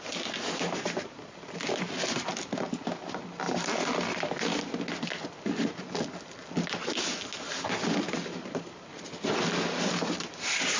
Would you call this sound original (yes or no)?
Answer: yes